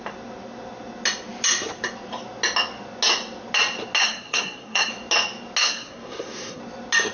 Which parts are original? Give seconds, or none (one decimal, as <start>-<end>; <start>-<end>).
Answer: 0.0-4.0; 4.9-5.6; 6.6-7.1